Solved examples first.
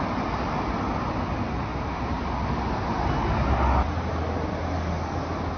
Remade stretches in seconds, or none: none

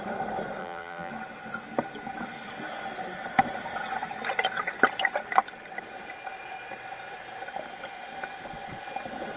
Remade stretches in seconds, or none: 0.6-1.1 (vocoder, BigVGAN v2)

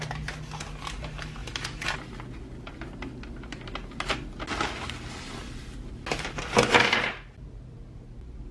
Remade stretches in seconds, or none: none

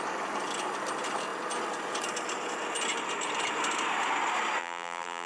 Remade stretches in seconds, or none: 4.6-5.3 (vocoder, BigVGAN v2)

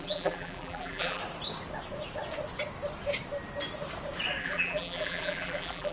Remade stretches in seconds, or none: 0.0-1.2 (vocoder, BigVGAN v2); 4.4-5.9

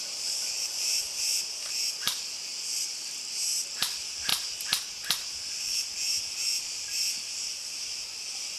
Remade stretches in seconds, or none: 0.0-2.5 (vocoder, BigVGAN v2); 3.8-4.3; 7.6-8.6

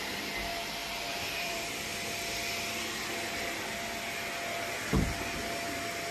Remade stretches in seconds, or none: 0.8-1.7 (vocoder, BigVGAN v2)